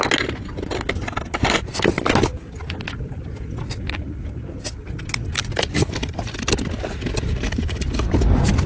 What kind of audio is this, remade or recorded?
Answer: recorded